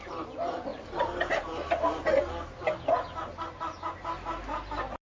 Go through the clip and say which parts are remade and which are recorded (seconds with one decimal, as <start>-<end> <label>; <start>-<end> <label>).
0.0-5.2 recorded